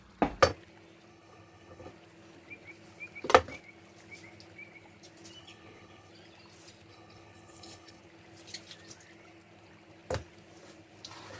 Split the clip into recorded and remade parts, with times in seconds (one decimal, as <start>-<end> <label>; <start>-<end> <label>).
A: 0.0-1.1 recorded; 1.1-1.9 remade; 1.9-5.4 recorded; 5.4-6.1 remade; 6.1-6.9 recorded; 6.9-8.0 remade; 8.0-11.4 recorded

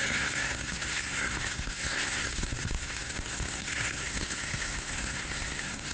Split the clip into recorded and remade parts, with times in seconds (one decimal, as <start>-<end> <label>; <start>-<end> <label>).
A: 0.0-5.9 remade